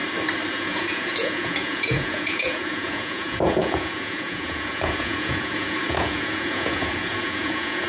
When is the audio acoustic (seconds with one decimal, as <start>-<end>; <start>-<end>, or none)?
0.0-0.5